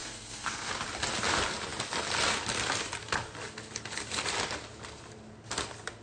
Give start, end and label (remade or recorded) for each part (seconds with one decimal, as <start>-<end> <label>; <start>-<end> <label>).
0.0-0.7 remade; 0.7-6.0 recorded